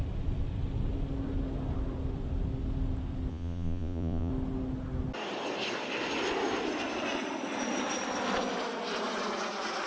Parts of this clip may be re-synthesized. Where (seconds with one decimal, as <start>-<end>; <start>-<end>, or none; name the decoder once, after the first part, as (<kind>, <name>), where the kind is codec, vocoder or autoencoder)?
3.3-4.3 (vocoder, Vocos)